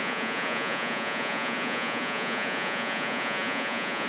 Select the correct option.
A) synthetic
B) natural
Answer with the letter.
A